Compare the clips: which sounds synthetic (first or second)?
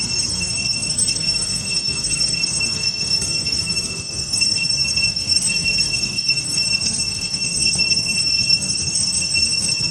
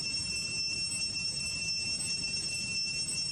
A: first